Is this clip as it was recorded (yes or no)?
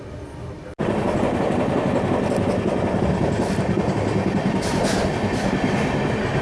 yes